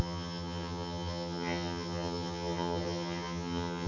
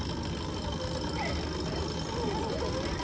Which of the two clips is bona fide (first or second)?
second